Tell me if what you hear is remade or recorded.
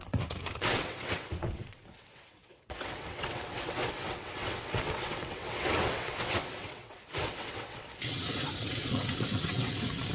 remade